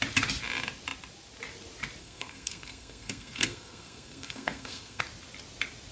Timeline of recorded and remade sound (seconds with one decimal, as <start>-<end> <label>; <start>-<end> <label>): 0.0-2.0 recorded; 2.0-5.0 remade; 5.0-5.9 recorded